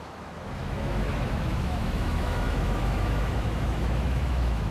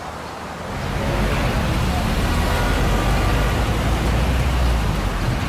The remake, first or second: first